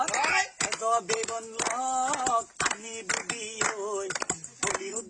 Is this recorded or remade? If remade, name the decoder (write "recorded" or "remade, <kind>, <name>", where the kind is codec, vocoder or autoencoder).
recorded